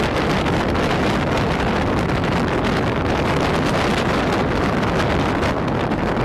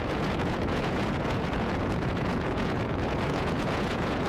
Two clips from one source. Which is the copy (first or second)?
second